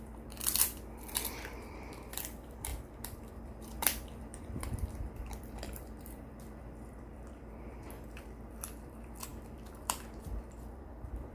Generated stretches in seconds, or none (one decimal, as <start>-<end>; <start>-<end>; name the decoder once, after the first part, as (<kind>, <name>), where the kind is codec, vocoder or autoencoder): 0.0-11.3 (vocoder, BigVGAN v2)